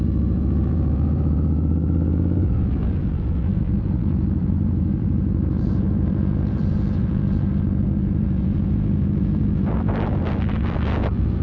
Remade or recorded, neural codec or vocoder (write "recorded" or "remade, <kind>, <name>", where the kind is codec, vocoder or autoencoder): remade, vocoder, BigVGAN v2